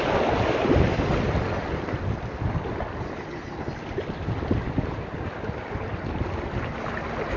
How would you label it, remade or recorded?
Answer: recorded